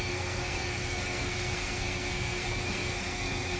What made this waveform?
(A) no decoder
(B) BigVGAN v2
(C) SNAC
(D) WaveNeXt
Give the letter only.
C